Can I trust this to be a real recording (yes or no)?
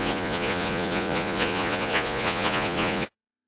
no